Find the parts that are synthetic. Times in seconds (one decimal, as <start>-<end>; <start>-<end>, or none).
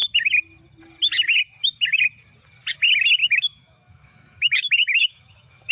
3.2-5.7